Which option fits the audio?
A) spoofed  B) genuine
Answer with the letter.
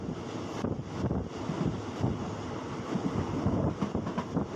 B